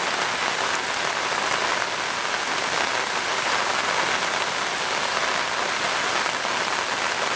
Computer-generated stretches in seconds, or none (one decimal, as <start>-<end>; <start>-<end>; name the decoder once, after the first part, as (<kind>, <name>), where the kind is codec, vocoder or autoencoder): none